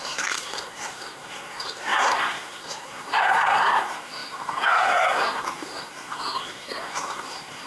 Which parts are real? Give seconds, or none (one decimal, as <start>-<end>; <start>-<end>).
none